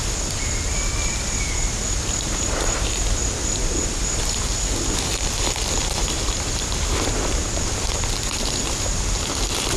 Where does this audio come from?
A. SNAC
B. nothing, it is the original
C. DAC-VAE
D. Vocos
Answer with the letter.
B